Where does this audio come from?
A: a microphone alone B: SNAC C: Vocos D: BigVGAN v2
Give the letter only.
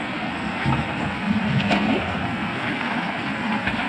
B